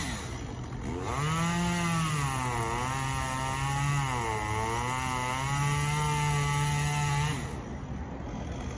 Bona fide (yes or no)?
yes